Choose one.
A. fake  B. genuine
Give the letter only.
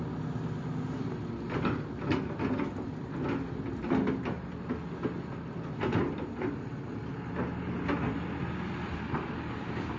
B